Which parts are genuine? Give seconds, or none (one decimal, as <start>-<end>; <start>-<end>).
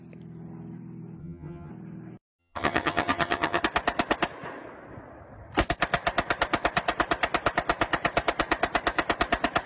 0.0-1.2; 1.7-2.4; 3.6-9.7